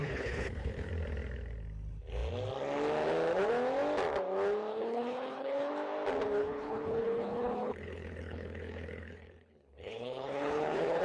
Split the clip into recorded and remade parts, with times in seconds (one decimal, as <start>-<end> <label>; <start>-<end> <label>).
0.0-0.9 remade; 0.9-4.7 recorded; 4.7-5.7 remade; 5.7-6.4 recorded; 6.4-11.0 remade